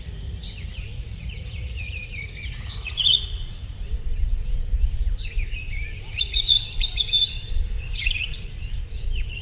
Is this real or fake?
fake